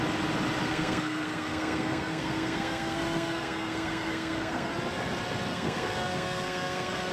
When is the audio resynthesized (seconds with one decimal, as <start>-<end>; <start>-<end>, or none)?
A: 0.6-4.7; 5.5-7.1